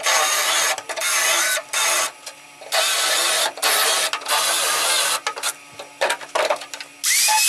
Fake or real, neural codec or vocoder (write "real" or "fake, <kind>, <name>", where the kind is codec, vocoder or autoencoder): real